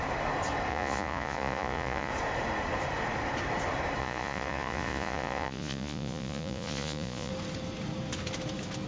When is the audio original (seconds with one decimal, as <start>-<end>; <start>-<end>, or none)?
0.0-0.7; 2.1-4.0; 7.3-8.9